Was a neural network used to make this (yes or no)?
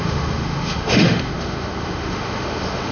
yes